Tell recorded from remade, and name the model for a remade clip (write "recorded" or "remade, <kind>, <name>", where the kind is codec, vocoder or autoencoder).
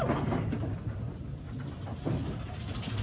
recorded